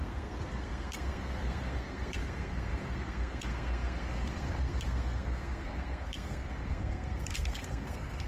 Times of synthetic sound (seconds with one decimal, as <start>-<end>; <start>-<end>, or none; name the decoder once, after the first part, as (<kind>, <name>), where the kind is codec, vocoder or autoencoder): 0.0-8.3 (codec, SNAC)